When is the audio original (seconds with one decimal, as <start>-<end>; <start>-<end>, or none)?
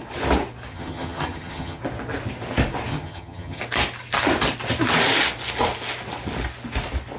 0.0-0.7; 1.8-2.9; 3.6-7.2